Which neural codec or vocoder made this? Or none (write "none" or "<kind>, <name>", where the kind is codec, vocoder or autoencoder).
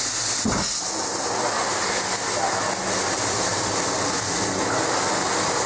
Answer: none